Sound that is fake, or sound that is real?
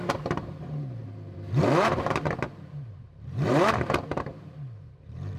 fake